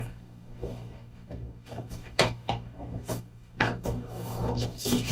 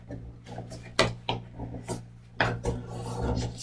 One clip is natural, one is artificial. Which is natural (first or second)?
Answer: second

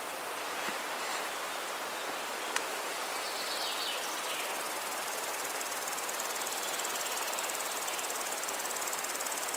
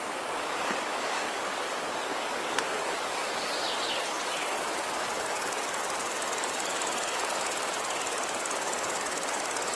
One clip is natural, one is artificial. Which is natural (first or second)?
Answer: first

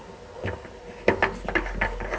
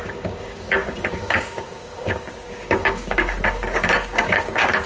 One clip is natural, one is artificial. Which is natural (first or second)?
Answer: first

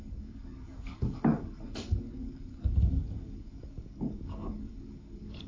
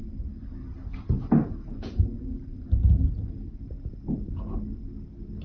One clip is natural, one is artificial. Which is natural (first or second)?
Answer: second